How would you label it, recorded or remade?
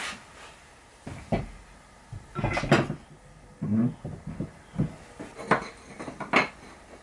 recorded